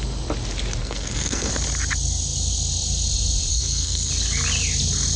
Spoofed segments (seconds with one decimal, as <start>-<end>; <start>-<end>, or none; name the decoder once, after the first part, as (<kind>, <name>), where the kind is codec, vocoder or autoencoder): 0.8-1.5 (codec, SNAC); 3.5-4.1